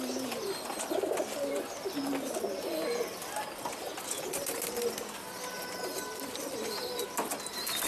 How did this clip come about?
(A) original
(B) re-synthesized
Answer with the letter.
A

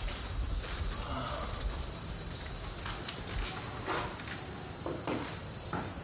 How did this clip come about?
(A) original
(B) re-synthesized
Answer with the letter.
B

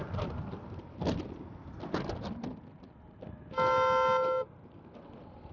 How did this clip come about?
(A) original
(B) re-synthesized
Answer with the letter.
A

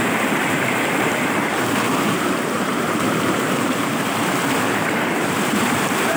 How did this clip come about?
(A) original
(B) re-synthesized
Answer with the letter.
B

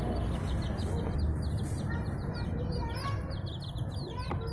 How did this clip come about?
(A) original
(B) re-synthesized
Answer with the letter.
A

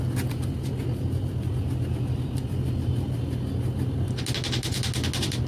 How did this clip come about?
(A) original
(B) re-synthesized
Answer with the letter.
A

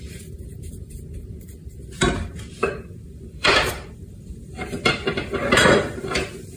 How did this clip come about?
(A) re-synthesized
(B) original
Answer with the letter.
A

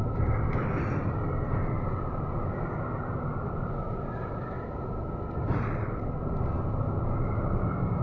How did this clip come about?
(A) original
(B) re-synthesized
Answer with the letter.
A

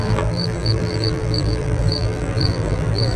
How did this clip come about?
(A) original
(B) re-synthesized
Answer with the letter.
B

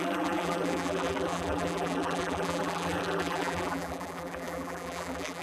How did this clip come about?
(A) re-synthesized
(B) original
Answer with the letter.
A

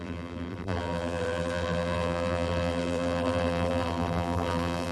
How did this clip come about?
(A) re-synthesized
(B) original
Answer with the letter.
A